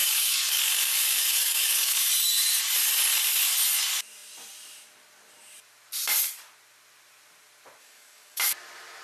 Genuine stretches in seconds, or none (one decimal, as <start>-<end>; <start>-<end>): 2.1-7.8; 8.4-9.0